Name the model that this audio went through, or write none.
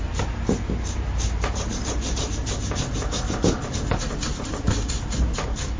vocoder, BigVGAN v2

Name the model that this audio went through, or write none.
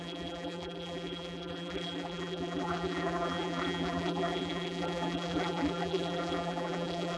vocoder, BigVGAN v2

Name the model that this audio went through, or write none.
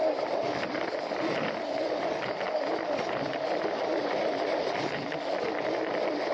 vocoder, BigVGAN v2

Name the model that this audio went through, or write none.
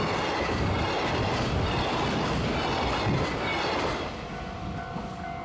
none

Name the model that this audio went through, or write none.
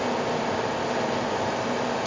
none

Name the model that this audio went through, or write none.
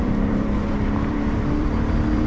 vocoder, BigVGAN v2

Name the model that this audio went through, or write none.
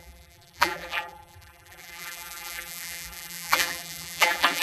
vocoder, BigVGAN v2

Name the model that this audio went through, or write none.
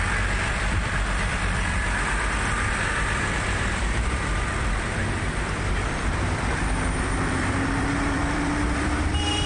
vocoder, BigVGAN v2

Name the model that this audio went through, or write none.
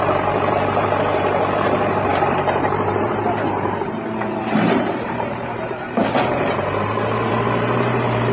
vocoder, BigVGAN v2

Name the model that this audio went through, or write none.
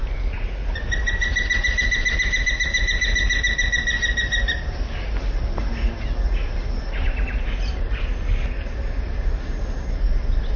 none